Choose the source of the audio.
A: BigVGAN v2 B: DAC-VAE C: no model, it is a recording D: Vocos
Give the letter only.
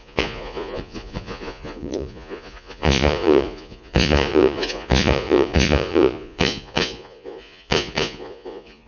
D